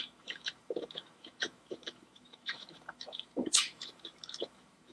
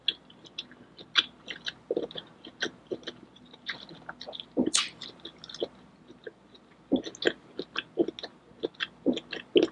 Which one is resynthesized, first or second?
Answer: first